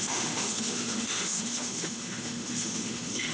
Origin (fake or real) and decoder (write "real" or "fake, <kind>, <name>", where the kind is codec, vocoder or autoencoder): fake, autoencoder, DAC-VAE